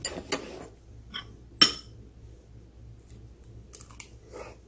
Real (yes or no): yes